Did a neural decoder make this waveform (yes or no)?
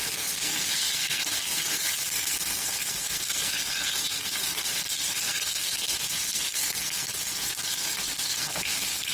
yes